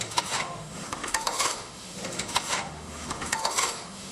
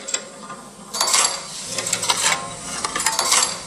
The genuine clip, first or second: second